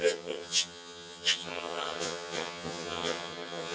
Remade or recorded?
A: remade